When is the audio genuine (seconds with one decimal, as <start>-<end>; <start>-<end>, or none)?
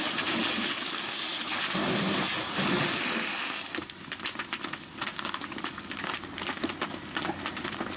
0.0-8.0